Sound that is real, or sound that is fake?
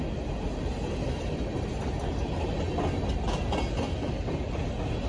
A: real